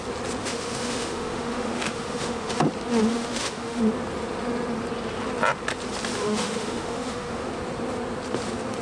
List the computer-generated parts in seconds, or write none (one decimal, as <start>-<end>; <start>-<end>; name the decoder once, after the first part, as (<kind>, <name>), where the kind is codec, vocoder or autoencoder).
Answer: 0.4-2.6 (autoencoder, DAC-VAE); 3.1-3.8; 6.2-7.5